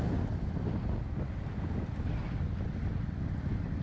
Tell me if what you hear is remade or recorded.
recorded